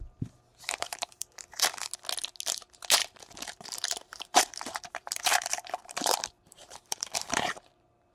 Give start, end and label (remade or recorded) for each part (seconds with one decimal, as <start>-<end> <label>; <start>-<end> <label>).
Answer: 0.0-0.5 recorded; 0.5-1.8 remade; 1.8-3.0 recorded; 3.0-8.1 remade